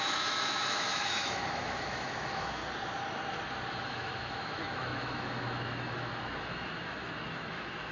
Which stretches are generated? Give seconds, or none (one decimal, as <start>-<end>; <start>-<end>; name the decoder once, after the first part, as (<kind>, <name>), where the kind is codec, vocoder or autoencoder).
0.0-2.6 (autoencoder, DAC-VAE); 3.7-7.9

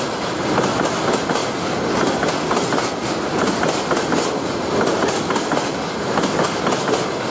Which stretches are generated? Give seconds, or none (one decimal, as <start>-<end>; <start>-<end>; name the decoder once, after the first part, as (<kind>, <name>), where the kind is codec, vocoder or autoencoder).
none